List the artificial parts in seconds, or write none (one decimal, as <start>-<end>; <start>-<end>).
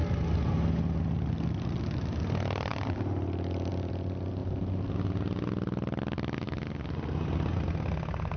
none